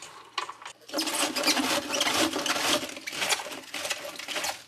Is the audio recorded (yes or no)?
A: yes